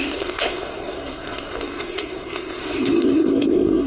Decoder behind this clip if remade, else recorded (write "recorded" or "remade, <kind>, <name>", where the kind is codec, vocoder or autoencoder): remade, codec, SNAC